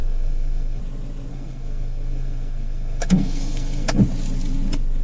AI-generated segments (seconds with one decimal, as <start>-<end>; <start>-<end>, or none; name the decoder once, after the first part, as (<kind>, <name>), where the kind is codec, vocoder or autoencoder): 0.0-0.8 (codec, SNAC); 1.3-4.0